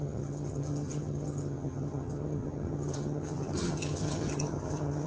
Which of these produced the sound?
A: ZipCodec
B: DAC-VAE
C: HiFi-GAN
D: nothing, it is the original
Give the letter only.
C